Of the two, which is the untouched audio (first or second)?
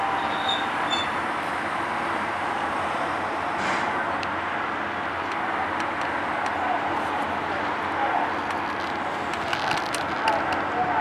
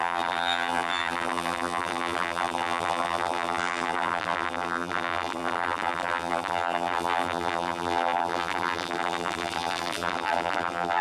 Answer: first